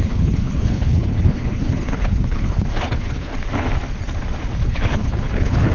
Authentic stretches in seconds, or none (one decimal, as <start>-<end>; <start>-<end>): 3.3-4.7